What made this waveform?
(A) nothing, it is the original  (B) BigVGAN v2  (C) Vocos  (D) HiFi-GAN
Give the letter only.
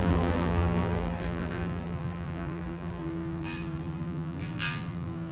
B